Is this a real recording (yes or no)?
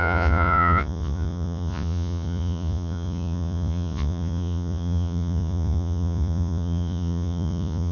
no